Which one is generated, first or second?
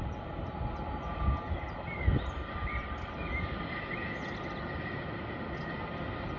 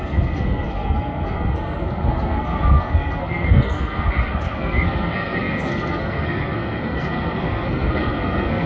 second